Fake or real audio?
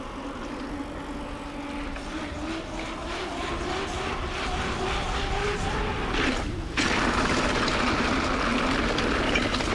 real